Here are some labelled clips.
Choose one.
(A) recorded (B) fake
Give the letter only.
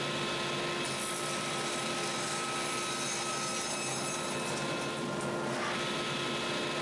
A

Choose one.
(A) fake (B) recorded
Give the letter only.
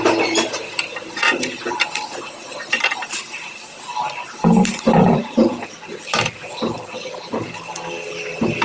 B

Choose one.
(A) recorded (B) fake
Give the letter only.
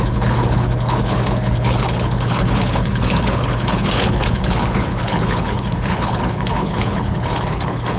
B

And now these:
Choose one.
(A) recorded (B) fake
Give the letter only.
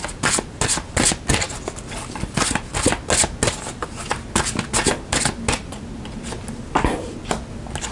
A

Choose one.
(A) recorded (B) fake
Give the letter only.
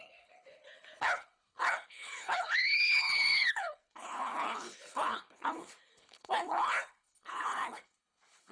B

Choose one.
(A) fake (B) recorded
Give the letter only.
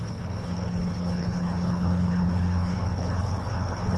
A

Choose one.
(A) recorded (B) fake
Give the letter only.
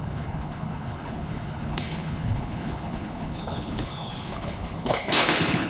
B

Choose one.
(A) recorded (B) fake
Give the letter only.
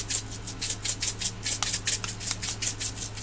A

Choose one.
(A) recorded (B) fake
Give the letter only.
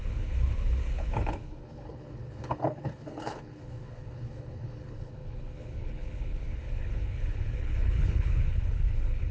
B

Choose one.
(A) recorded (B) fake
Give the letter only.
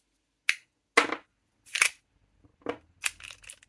A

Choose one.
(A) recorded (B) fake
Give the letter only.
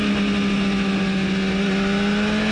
A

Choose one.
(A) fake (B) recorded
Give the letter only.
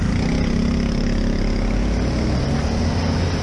B